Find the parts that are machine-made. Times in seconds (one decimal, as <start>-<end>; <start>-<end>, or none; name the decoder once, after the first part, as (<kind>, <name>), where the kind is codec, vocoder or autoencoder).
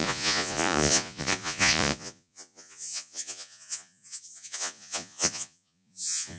0.0-6.4 (vocoder, Vocos)